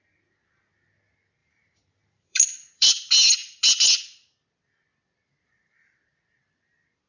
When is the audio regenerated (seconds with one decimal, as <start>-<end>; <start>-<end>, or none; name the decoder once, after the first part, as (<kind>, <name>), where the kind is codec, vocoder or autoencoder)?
1.4-2.9 (vocoder, BigVGAN v2)